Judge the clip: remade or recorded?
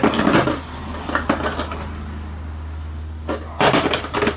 recorded